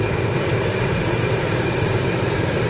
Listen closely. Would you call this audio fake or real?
fake